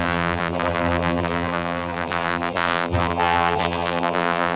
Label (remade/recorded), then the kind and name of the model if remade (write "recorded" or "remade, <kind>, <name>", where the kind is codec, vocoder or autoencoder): remade, vocoder, BigVGAN v2